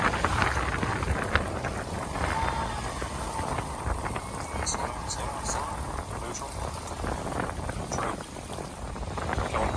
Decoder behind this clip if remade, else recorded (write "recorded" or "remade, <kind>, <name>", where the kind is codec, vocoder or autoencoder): remade, vocoder, BigVGAN v2